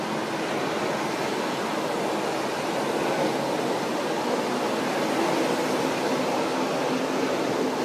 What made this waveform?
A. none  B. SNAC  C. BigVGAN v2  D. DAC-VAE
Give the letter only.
A